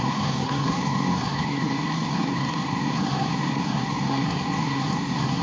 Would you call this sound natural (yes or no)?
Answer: no